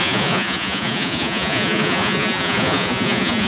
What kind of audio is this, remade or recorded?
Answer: remade